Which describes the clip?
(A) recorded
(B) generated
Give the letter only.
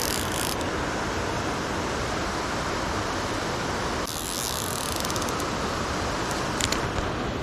A